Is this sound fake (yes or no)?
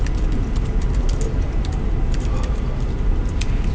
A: no